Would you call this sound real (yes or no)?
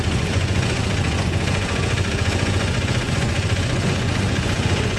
no